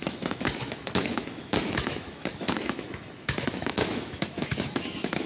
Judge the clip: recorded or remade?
remade